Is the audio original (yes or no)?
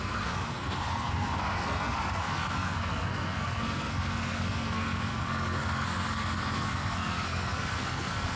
no